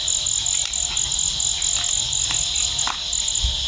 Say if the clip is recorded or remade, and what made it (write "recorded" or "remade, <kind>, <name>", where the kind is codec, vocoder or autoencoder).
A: recorded